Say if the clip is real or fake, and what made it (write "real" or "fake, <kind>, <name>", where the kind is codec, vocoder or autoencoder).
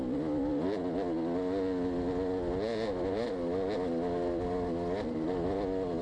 real